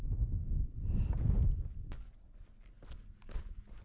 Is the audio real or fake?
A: real